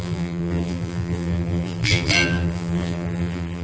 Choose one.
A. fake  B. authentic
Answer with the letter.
A